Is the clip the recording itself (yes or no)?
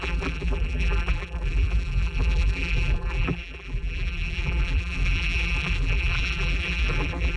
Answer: no